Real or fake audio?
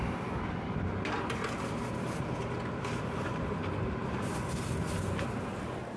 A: real